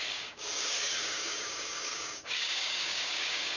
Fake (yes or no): yes